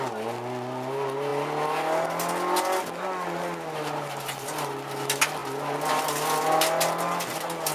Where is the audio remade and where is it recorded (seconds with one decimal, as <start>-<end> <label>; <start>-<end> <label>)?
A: 0.0-7.7 recorded